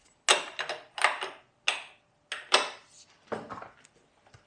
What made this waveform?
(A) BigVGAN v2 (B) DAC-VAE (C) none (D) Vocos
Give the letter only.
C